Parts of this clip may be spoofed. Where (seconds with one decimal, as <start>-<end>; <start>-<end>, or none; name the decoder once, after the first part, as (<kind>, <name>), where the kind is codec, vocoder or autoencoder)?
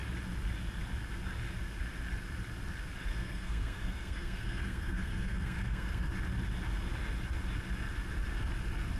3.1-6.1 (codec, SNAC)